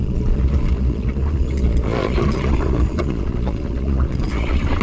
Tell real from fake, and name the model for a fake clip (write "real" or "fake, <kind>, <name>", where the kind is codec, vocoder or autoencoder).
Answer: fake, vocoder, Vocos